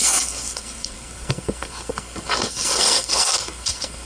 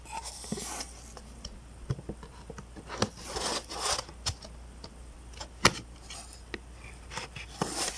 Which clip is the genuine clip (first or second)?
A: second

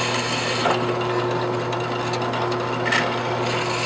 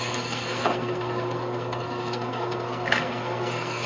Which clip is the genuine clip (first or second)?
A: first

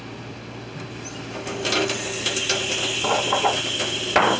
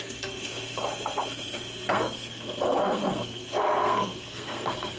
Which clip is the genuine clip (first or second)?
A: first